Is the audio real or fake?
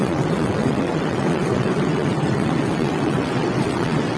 fake